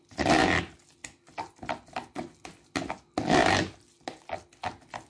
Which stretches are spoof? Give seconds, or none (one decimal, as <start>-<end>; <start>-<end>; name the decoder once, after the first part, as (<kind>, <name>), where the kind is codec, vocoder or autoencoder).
none